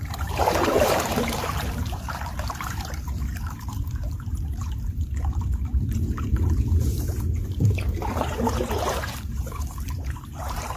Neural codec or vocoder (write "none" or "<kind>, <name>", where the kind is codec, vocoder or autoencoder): vocoder, BigVGAN v2